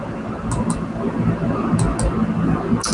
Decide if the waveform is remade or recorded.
recorded